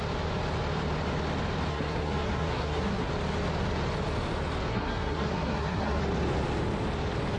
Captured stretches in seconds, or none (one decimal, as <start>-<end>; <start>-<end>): 0.0-1.7; 3.1-4.7; 6.0-7.4